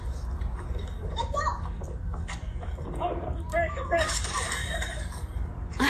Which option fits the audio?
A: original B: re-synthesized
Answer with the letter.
B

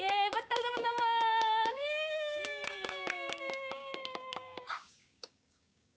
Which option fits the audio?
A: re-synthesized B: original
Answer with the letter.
A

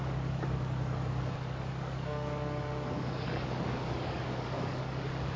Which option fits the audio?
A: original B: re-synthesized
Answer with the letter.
B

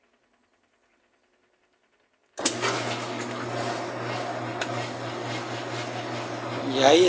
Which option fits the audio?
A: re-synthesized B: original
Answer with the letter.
B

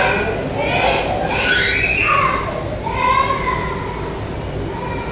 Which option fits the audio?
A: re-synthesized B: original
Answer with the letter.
B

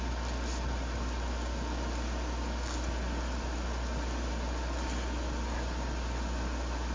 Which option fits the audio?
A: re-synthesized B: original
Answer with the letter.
B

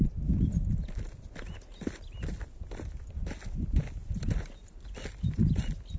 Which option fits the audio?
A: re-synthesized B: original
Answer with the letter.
B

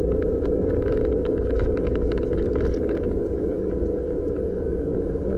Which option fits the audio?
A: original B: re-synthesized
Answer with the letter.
B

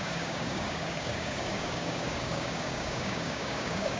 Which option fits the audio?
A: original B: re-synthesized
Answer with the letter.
B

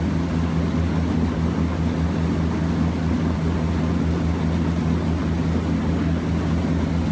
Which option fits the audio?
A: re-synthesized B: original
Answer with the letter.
B